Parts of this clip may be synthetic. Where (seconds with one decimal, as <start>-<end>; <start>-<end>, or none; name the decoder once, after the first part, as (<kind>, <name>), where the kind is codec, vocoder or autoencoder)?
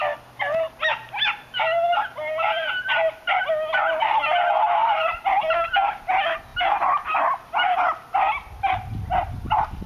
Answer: none